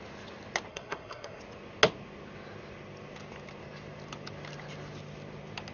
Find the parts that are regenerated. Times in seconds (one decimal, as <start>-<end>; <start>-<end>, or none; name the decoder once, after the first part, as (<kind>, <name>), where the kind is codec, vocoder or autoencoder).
0.7-1.4 (codec, SNAC)